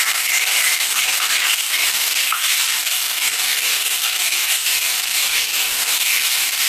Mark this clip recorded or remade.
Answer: remade